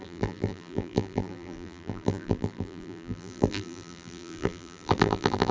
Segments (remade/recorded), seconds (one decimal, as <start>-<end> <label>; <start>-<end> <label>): 0.0-5.5 remade